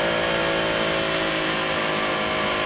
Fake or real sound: real